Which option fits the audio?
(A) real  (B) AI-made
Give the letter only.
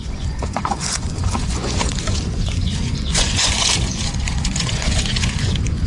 B